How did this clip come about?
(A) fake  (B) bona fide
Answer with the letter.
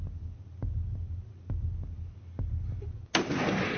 B